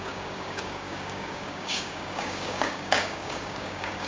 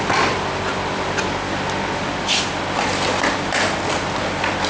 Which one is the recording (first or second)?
second